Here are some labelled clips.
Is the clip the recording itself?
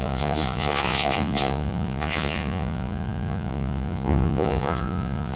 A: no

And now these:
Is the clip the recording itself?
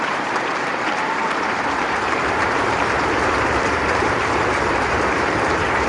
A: no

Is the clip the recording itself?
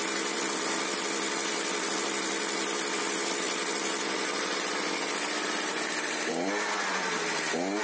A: no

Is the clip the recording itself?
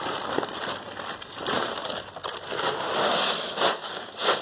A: yes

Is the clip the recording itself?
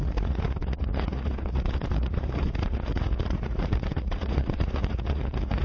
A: no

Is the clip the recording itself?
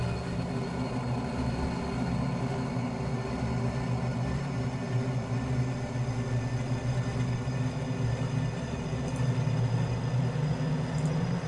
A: yes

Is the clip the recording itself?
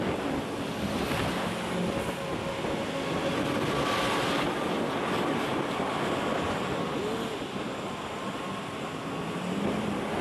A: yes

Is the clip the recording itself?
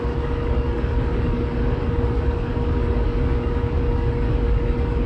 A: no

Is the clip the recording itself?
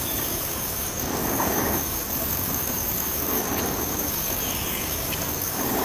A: no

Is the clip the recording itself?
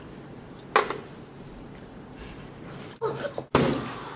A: yes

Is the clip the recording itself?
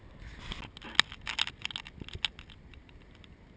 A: yes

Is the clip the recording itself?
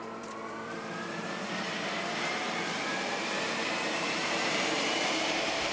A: no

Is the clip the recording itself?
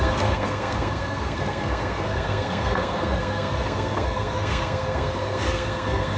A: no